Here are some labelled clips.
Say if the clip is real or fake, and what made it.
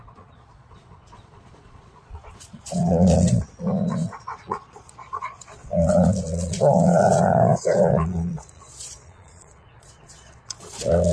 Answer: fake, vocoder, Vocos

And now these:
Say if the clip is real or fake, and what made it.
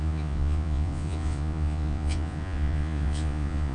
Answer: fake, vocoder, Vocos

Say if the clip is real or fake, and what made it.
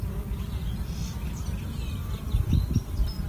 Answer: real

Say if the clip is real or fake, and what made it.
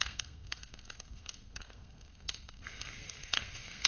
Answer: fake, codec, SNAC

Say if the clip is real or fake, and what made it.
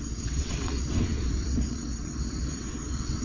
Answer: fake, vocoder, WaveNeXt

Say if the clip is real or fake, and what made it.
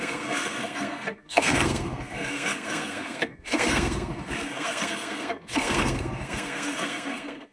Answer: fake, codec, SNAC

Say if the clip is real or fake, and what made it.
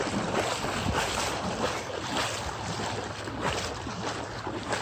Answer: real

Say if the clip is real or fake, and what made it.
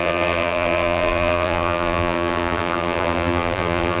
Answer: fake, vocoder, BigVGAN v2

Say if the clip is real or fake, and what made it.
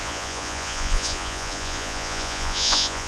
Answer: fake, vocoder, Vocos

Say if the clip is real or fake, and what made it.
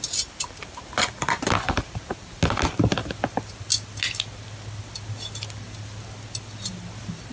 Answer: real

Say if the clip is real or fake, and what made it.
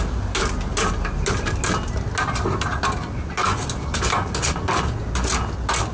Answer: real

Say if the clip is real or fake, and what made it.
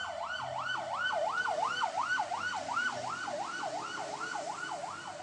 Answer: real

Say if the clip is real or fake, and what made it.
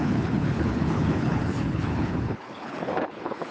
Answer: fake, codec, HILCodec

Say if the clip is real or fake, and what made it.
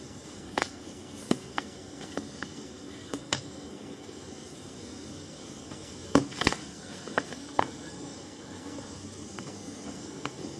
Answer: fake, codec, SNAC